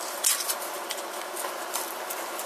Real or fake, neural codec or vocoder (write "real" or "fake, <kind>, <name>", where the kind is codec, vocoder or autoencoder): real